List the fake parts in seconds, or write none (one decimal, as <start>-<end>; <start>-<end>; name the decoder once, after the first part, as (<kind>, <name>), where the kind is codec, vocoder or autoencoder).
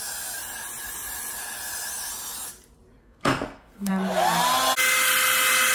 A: 3.0-3.9 (codec, SNAC)